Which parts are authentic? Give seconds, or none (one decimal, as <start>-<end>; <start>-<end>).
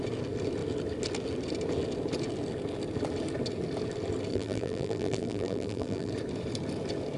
0.0-4.3; 6.1-7.2